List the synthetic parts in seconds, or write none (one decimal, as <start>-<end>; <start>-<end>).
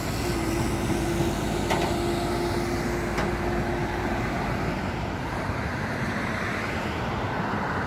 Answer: 3.8-6.4